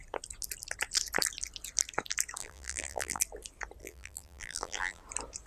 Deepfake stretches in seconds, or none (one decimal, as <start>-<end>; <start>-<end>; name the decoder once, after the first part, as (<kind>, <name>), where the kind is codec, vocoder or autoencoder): 2.4-3.2 (vocoder, BigVGAN v2); 3.8-5.0